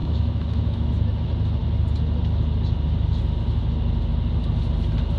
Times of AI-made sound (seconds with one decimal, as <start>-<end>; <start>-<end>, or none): 0.0-0.9

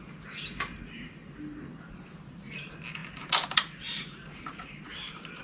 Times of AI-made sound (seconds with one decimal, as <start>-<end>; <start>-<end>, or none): 3.0-4.8

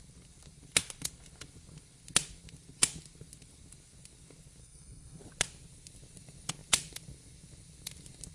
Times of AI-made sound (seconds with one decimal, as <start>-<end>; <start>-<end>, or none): 4.6-5.2

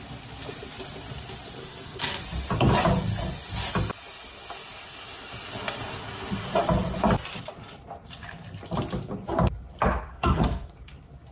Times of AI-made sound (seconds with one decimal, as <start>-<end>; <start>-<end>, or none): 1.6-2.2; 10.1-10.7

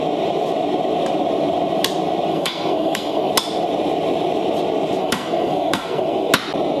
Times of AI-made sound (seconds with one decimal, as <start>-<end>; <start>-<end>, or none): 2.3-3.3; 5.0-6.3

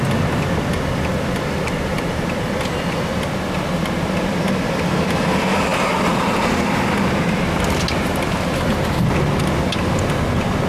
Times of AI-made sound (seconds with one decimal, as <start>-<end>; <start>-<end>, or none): none

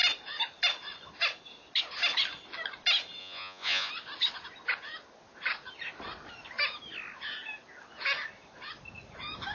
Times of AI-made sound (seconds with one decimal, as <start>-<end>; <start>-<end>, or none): 3.2-3.9